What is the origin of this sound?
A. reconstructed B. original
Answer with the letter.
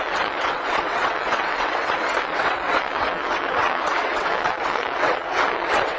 A